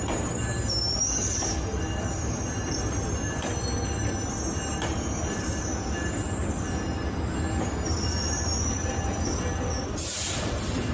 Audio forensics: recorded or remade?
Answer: recorded